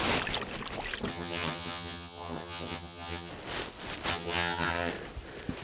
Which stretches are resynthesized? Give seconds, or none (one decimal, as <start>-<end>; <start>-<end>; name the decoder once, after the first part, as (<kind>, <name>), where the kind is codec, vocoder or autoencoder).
1.1-3.3 (vocoder, HiFi-GAN); 4.1-4.9